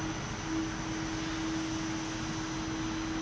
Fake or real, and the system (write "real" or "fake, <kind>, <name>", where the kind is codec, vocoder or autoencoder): real